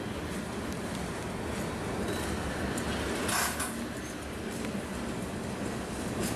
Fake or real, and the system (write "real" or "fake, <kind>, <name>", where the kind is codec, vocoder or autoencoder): real